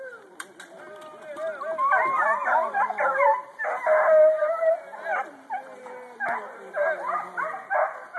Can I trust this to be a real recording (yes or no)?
no